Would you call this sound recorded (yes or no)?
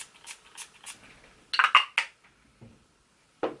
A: yes